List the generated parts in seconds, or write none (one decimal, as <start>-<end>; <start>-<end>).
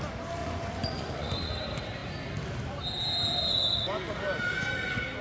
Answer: 0.4-1.5